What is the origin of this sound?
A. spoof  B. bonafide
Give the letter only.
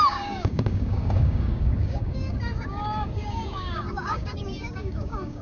A